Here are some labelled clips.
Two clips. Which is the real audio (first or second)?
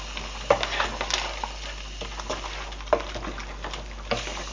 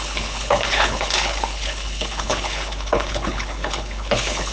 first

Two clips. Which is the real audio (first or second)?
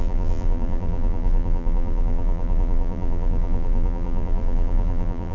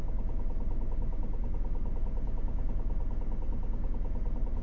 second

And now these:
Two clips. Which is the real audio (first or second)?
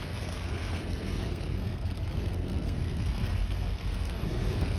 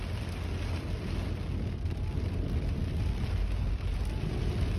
second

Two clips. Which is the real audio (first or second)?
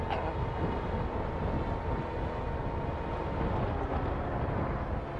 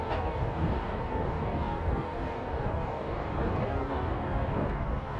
first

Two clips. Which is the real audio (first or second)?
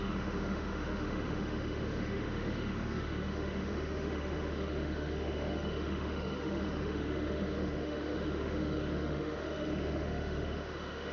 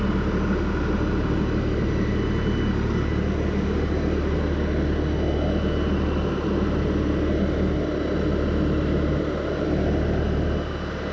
second